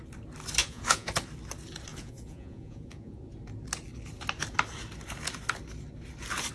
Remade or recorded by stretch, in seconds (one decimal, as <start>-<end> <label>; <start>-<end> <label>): 0.0-0.6 recorded; 0.6-1.1 remade; 1.1-1.9 recorded; 1.9-3.3 remade; 3.3-6.5 recorded